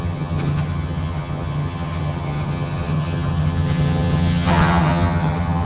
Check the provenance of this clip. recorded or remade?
remade